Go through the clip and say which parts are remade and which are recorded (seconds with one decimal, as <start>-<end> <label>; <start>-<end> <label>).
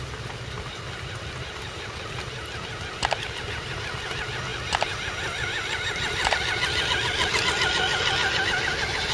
0.0-4.5 recorded; 4.5-6.3 remade; 6.3-9.1 recorded